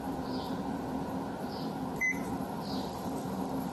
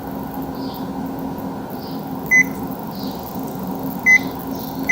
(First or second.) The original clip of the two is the second